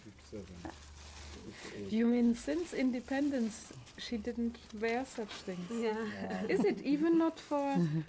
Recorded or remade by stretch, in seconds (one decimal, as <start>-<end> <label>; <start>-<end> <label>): 0.0-1.4 recorded; 1.4-2.4 remade; 2.4-8.1 recorded

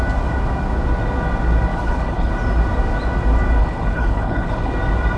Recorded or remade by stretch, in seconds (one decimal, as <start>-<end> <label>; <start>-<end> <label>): 0.0-1.7 recorded; 1.7-2.3 remade; 2.3-3.6 recorded; 3.6-4.7 remade; 4.7-5.2 recorded

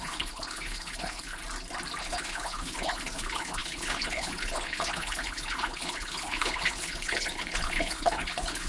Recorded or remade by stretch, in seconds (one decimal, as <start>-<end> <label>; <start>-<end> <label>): 0.0-1.4 remade; 1.4-2.0 recorded; 2.0-8.7 remade

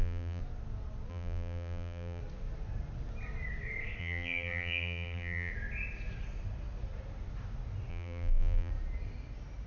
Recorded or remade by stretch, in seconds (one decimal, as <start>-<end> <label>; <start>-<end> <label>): 0.0-0.4 remade; 0.4-1.1 recorded; 1.1-2.2 remade; 2.2-4.0 recorded; 4.0-5.5 remade; 5.5-7.9 recorded; 7.9-8.7 remade; 8.7-9.7 recorded

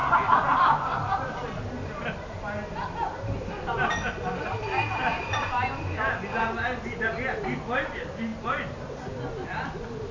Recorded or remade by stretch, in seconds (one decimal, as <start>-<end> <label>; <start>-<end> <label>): 0.0-10.1 recorded

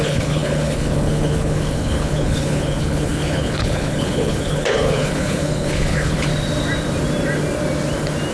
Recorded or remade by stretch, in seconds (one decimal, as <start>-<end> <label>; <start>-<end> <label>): 0.0-6.3 remade; 6.3-8.3 recorded

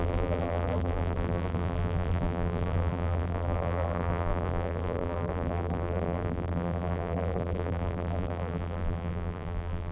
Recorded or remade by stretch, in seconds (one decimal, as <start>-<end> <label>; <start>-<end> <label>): 0.0-9.9 remade

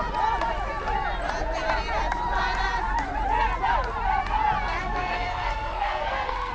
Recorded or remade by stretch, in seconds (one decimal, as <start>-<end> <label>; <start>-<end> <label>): 0.0-4.8 recorded; 4.8-6.5 remade